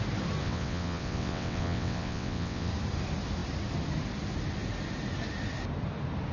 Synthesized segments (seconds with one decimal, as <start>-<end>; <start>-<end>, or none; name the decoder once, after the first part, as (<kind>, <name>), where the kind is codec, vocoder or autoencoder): 0.4-2.7 (vocoder, WaveNeXt)

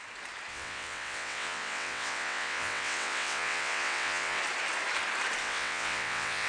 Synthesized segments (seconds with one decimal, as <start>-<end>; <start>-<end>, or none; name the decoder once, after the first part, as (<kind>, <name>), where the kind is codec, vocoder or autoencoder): 0.5-4.4 (vocoder, WaveNeXt); 5.4-6.5

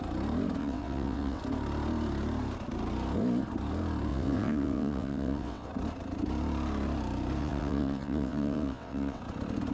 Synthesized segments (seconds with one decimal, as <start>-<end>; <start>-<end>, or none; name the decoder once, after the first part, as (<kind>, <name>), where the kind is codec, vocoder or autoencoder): 0.6-1.4 (vocoder, WaveNeXt); 4.1-5.7; 7.4-9.2

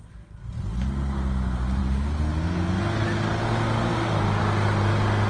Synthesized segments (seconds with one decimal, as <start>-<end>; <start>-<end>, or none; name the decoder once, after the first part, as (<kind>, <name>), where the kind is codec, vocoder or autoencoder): none

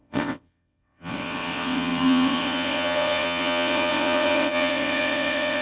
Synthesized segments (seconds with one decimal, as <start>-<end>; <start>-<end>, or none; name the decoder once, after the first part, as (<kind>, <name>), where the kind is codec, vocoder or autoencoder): 0.0-5.6 (vocoder, WaveNeXt)

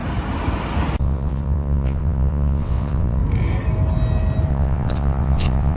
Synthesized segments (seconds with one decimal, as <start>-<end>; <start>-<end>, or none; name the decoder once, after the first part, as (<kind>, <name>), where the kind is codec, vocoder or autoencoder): 1.0-3.2 (vocoder, WaveNeXt); 4.5-5.8

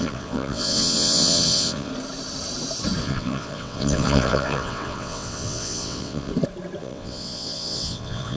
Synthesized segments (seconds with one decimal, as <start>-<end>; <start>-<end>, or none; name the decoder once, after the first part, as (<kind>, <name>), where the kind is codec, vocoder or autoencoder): 0.0-1.9 (vocoder, WaveNeXt); 3.0-6.3; 6.8-8.4

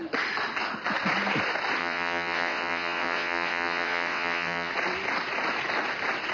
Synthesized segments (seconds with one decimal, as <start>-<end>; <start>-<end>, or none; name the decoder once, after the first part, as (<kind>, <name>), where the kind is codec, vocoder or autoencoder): 1.8-4.7 (vocoder, WaveNeXt)